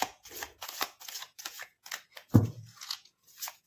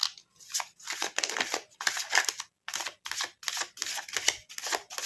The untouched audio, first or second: second